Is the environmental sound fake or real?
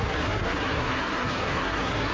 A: fake